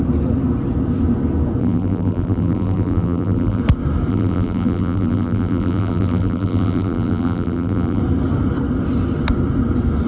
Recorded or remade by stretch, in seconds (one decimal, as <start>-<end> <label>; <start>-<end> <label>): 0.0-1.6 recorded; 1.6-3.6 remade; 3.6-4.1 recorded; 4.1-8.0 remade; 8.0-10.1 recorded